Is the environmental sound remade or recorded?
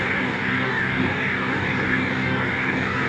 remade